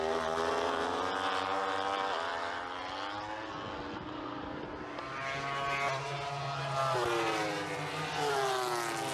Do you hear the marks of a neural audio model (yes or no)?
no